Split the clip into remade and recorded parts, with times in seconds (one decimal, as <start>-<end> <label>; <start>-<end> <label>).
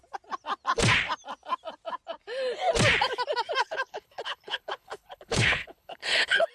0.0-3.6 recorded; 3.6-6.5 remade